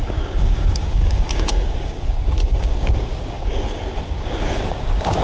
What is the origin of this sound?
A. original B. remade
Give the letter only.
B